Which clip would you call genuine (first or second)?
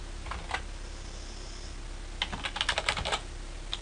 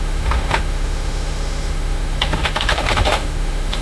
first